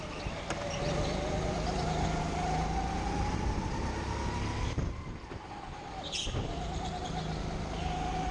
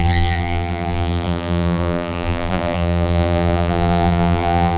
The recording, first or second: first